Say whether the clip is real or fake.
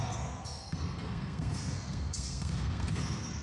fake